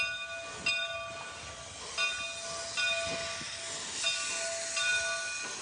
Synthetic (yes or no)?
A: no